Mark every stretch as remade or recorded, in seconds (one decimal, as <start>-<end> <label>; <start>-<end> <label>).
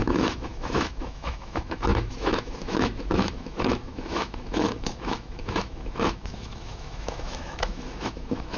0.0-8.6 remade